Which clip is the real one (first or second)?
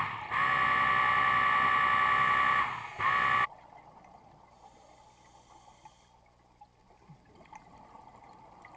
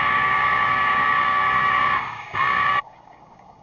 first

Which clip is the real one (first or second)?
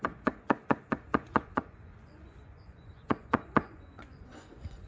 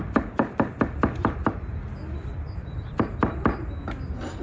second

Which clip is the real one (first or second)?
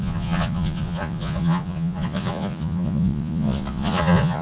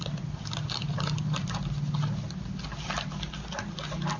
second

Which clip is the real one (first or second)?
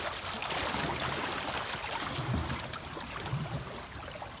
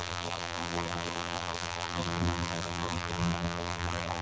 first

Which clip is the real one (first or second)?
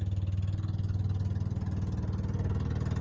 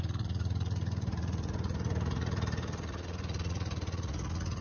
first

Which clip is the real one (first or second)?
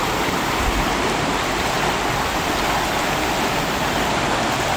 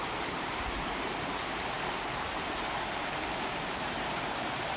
first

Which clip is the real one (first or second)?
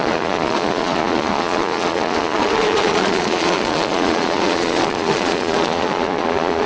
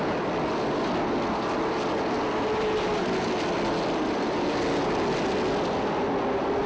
second